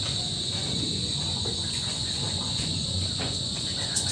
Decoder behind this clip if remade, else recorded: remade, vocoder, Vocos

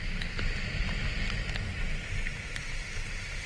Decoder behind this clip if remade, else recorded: recorded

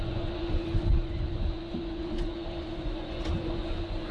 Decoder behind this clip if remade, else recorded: remade, vocoder, Vocos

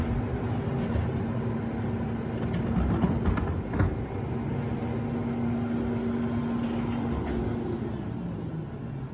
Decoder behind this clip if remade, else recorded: recorded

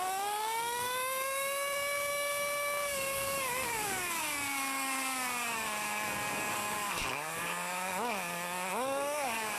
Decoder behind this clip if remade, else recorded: remade, codec, DAC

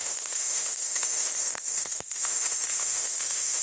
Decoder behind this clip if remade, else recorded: remade, autoencoder, DAC-VAE